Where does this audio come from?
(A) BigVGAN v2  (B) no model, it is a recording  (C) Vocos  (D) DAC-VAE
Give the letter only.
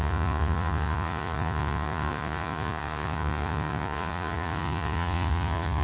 C